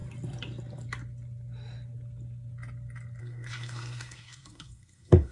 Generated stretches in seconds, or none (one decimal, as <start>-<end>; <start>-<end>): 3.2-5.3